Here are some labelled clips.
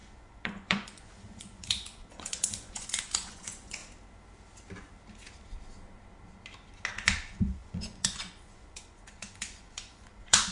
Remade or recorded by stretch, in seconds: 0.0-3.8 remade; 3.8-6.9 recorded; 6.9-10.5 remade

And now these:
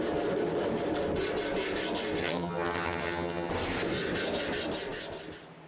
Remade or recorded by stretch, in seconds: 0.0-2.2 recorded; 2.2-3.5 remade; 3.5-5.7 recorded

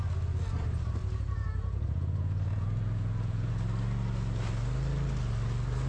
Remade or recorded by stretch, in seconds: 0.0-1.0 recorded; 1.0-3.5 remade; 3.5-5.9 recorded

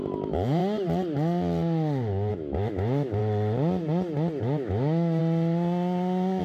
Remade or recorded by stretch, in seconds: 0.0-0.6 remade; 0.6-2.3 recorded; 2.3-3.2 remade; 3.2-4.4 recorded; 4.4-5.2 remade; 5.2-6.4 recorded

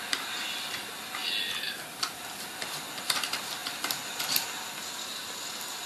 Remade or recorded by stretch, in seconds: 0.0-5.9 recorded

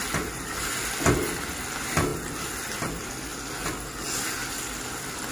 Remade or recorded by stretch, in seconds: 0.0-5.3 recorded